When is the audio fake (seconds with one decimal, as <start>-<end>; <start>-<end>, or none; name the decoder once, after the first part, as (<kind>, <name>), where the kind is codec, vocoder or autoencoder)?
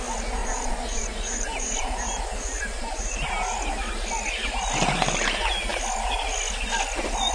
0.4-3.3 (vocoder, BigVGAN v2)